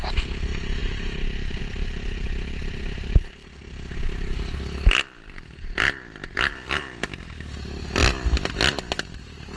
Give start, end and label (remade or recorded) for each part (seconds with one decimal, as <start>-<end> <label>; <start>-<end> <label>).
0.0-0.8 recorded; 0.8-1.6 remade; 1.6-9.6 recorded